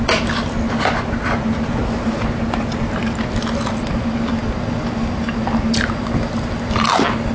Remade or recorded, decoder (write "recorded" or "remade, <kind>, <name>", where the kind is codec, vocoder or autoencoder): recorded